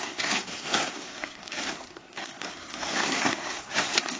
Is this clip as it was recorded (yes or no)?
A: no